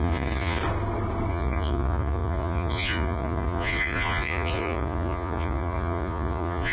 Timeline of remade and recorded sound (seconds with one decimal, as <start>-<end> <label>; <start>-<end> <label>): 0.0-0.6 remade; 0.6-1.3 recorded; 1.3-6.7 remade